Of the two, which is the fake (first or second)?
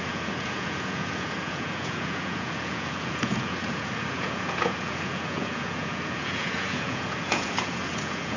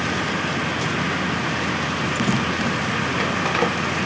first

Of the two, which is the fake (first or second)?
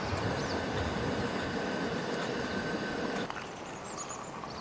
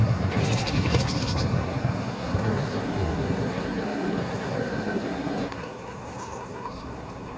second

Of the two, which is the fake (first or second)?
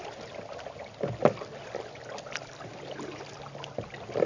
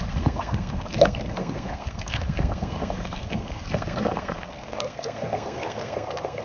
second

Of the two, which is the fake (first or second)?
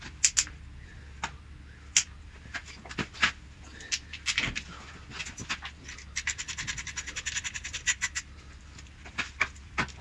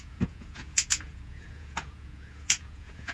second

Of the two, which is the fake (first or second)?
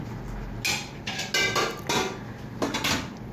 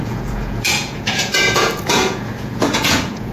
second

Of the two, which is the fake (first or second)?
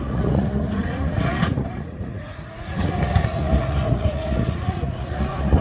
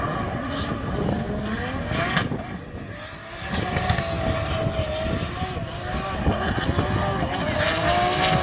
first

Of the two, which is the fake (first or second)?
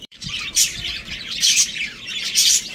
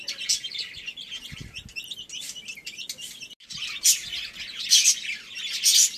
first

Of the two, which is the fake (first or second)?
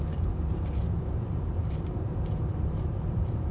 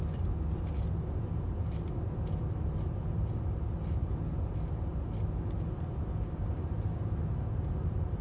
first